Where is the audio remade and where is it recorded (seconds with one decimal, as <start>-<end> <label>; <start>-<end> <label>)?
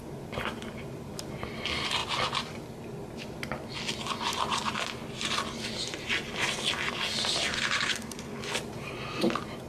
0.0-7.5 recorded; 7.5-8.4 remade; 8.4-9.7 recorded